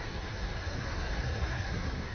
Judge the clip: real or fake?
fake